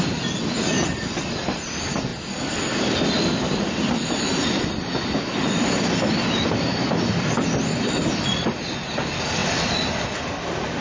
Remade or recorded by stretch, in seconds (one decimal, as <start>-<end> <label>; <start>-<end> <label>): 0.0-10.8 recorded